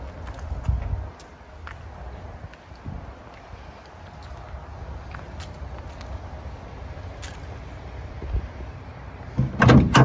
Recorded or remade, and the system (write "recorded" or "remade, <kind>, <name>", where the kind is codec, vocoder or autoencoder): recorded